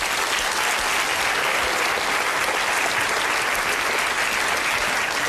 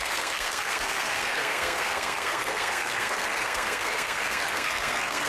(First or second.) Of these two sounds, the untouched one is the first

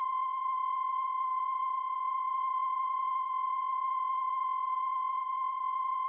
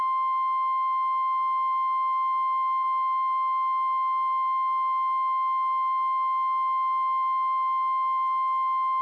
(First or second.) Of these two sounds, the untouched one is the second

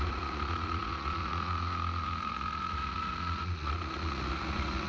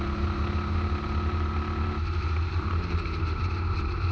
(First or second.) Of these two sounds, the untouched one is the second